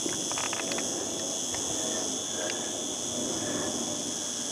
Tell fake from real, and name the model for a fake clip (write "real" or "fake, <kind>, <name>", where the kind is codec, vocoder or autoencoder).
real